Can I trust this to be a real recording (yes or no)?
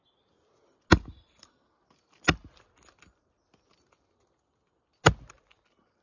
yes